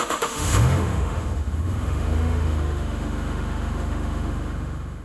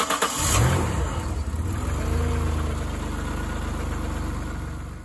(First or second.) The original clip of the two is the second